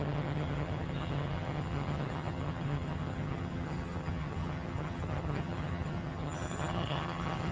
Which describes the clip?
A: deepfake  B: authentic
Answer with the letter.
A